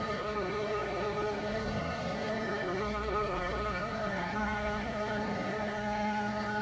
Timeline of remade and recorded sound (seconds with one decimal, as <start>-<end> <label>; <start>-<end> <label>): 0.0-6.6 remade